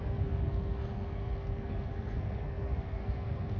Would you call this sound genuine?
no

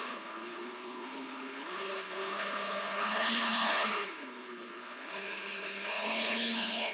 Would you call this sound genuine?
no